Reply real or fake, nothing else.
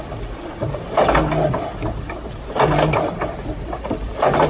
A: real